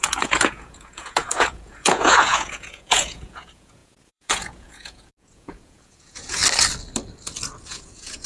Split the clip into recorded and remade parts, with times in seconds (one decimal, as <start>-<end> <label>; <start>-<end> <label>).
0.0-6.4 remade; 6.4-7.7 recorded; 7.7-8.3 remade